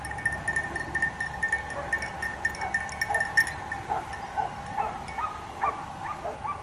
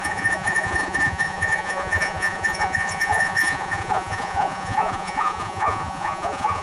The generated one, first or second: second